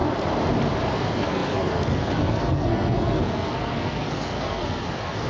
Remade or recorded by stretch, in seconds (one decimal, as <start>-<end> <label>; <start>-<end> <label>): 0.0-0.9 recorded; 0.9-5.3 remade